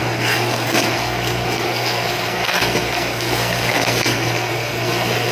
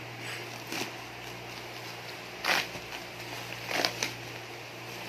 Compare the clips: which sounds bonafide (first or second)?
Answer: second